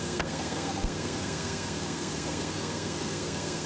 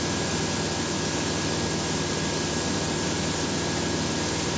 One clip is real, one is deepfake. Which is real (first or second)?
second